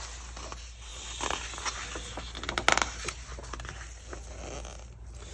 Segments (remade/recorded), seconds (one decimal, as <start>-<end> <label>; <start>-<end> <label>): 0.0-5.3 recorded